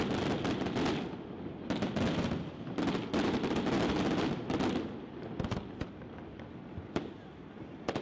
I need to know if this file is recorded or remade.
recorded